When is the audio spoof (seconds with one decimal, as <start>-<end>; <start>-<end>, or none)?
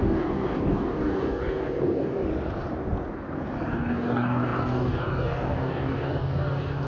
0.0-2.2; 3.7-6.9